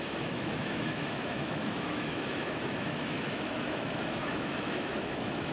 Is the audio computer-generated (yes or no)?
yes